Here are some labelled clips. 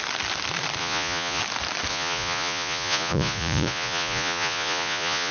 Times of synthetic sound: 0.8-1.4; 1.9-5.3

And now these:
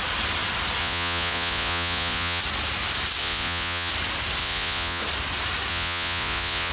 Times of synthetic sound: 0.8-2.4; 3.2-3.9; 4.4-5.0; 5.7-6.7

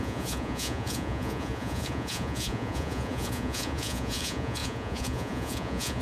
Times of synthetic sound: 0.0-6.0

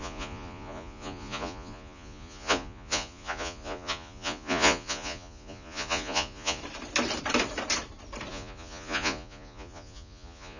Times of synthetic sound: 0.0-6.6; 8.3-10.6

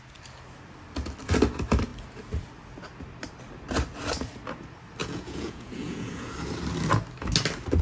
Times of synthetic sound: 5.0-6.3